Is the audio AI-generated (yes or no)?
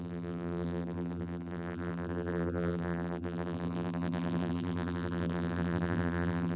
yes